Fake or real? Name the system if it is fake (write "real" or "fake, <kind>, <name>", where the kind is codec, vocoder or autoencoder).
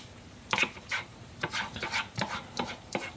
fake, vocoder, BigVGAN v2